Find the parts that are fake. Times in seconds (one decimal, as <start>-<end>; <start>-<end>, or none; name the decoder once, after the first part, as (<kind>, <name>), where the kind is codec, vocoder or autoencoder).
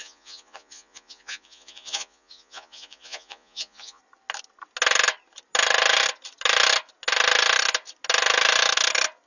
0.0-4.0 (vocoder, Vocos)